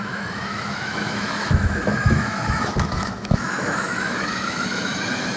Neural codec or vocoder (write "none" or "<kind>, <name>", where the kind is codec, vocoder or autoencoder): autoencoder, DAC-VAE